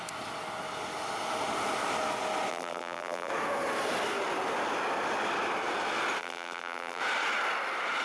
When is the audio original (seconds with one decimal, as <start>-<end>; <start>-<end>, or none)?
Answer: 0.0-2.5; 3.3-6.2; 7.0-8.0